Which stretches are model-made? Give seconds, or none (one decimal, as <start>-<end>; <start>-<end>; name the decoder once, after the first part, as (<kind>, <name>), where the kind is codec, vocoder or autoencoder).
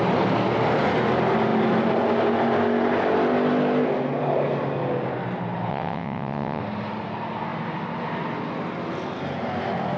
5.7-6.6 (vocoder, WaveNeXt)